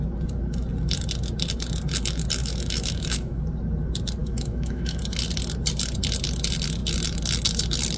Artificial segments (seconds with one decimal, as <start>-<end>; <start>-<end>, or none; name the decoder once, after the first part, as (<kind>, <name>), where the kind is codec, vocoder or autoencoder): 2.4-3.4 (autoencoder, DAC-VAE); 4.2-5.0